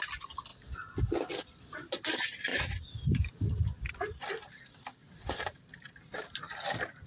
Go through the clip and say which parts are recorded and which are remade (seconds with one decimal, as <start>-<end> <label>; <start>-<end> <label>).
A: 0.0-5.0 recorded; 5.0-7.1 remade